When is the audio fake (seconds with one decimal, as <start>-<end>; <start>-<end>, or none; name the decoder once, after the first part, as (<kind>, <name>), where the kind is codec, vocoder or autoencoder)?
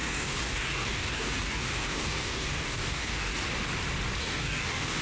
0.0-3.3 (codec, DAC); 4.2-5.0